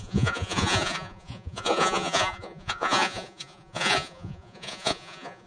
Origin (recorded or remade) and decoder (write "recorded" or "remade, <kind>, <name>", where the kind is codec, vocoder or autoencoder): remade, vocoder, Vocos